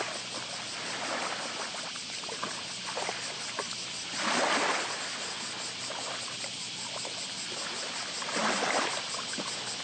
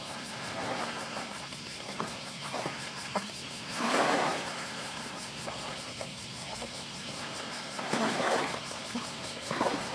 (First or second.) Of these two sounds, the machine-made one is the second